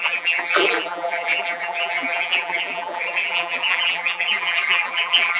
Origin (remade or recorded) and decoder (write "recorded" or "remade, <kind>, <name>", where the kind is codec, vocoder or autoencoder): remade, vocoder, BigVGAN v2